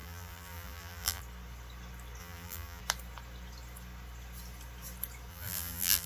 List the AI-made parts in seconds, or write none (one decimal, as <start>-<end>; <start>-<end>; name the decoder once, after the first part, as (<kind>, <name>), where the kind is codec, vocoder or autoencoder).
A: 0.0-1.2 (vocoder, BigVGAN v2); 2.2-2.8; 5.3-6.1

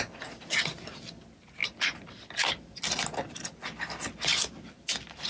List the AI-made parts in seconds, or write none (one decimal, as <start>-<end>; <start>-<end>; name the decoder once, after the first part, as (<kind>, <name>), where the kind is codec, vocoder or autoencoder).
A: 4.3-5.3 (vocoder, BigVGAN v2)

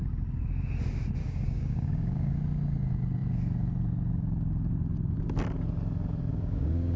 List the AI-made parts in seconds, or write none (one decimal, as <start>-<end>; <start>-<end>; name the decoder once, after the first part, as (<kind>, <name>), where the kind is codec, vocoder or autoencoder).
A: 1.2-2.3 (codec, DAC); 6.3-7.0

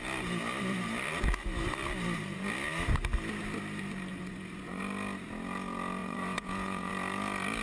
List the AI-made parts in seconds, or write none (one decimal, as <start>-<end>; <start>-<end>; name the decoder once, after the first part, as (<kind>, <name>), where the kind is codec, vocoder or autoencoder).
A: 4.1-4.8 (vocoder, Vocos); 6.0-6.9